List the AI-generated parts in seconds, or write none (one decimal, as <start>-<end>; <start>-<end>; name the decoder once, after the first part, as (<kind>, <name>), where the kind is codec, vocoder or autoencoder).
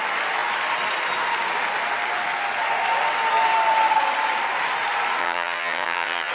5.2-6.3 (vocoder, HiFi-GAN)